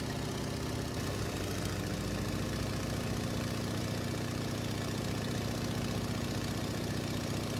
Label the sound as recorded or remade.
recorded